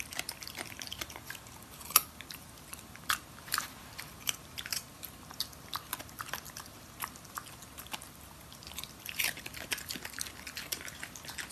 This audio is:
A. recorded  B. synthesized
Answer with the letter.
B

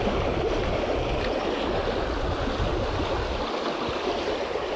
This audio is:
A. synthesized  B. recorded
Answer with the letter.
B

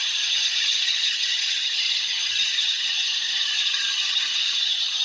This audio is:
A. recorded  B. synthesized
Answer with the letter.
B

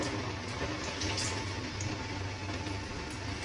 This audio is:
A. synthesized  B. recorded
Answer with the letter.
B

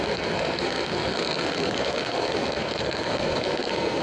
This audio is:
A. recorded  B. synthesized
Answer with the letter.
B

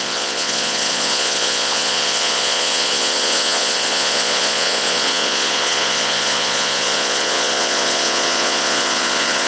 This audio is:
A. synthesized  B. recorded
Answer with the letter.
A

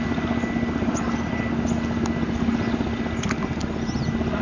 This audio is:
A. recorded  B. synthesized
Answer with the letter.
A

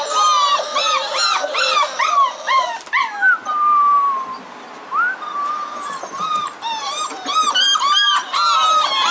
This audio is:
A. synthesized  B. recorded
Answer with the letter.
B